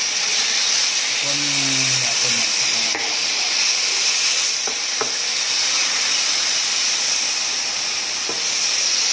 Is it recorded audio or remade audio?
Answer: recorded